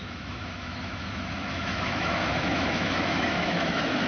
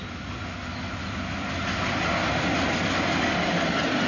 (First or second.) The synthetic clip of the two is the first